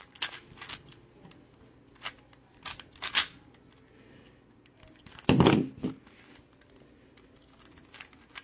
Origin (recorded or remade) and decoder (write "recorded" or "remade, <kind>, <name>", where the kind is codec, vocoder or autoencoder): recorded